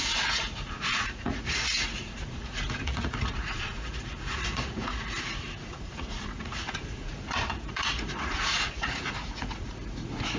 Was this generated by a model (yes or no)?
yes